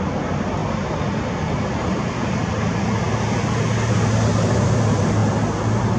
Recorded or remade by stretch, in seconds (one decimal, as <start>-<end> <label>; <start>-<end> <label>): 0.0-0.6 remade; 0.6-3.9 recorded; 3.9-5.2 remade; 5.2-6.0 recorded

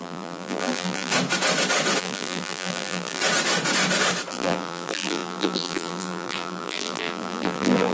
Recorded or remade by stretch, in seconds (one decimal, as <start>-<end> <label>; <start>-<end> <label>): 0.0-1.1 remade; 1.1-2.0 recorded; 2.0-3.2 remade; 3.2-4.3 recorded; 4.3-7.9 remade

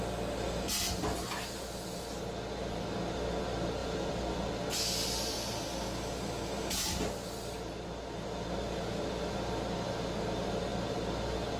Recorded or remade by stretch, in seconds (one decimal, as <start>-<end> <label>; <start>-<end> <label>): 0.0-3.8 recorded; 3.8-4.5 remade; 4.5-11.6 recorded

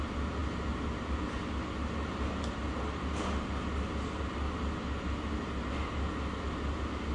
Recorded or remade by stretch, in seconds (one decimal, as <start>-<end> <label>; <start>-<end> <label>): 0.0-7.1 recorded